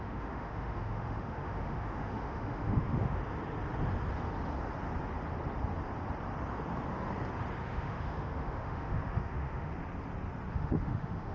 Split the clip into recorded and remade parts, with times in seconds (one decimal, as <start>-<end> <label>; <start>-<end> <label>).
0.0-3.2 remade; 3.2-7.6 recorded; 7.6-9.7 remade; 9.7-10.5 recorded; 10.5-11.3 remade